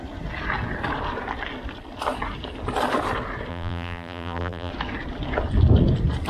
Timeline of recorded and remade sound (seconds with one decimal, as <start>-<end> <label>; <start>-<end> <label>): 0.0-3.5 recorded; 3.5-4.7 remade; 4.7-6.3 recorded